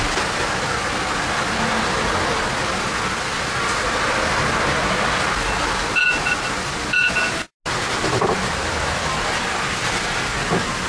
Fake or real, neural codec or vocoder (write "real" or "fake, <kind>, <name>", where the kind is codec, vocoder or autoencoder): real